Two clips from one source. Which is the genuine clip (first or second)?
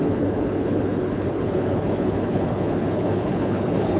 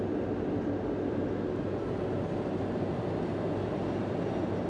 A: second